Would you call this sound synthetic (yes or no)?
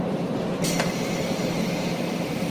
no